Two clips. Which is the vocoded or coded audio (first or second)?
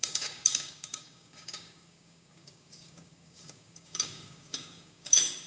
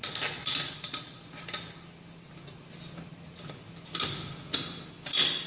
first